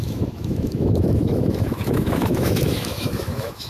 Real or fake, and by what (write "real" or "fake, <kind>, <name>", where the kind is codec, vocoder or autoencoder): fake, autoencoder, DAC-VAE